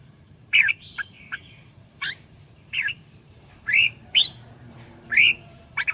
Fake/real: fake